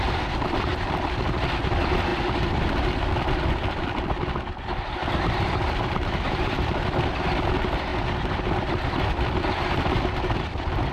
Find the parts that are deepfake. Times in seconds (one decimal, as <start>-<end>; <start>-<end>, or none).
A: 0.0-0.7; 1.6-7.9; 8.4-10.9